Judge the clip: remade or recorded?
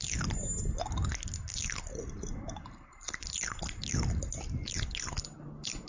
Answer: recorded